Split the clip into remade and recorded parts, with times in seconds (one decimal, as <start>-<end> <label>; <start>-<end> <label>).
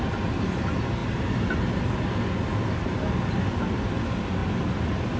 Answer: 0.0-5.2 recorded